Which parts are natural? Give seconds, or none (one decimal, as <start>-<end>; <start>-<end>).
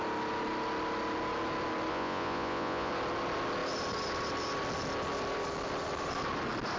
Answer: 0.0-1.9; 2.9-6.8